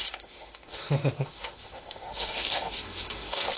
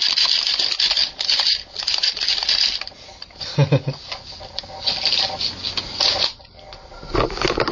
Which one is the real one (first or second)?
second